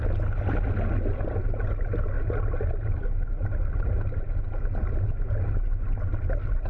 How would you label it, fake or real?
real